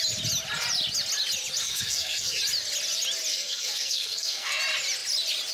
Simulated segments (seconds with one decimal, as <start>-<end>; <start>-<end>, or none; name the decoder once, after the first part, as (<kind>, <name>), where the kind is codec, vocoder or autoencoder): 1.6-2.4 (codec, SNAC); 3.3-4.6